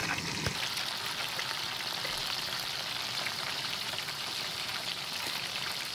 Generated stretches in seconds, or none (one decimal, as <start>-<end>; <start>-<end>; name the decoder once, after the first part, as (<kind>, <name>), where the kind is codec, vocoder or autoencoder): 3.3-5.9 (vocoder, BigVGAN v2)